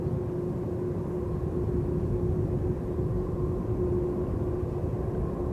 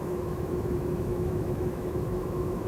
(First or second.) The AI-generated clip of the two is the second